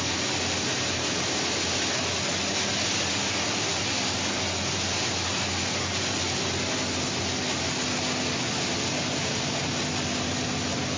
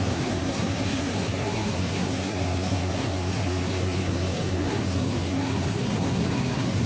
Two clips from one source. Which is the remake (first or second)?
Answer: second